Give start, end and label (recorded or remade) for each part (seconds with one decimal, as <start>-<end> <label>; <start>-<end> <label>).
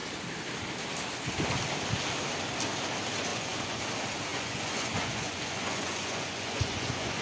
0.0-3.3 recorded; 3.3-3.8 remade; 3.8-4.3 recorded; 4.3-7.2 remade